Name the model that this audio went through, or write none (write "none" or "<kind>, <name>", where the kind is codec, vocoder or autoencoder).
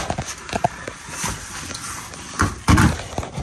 none